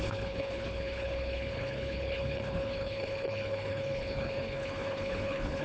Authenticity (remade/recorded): remade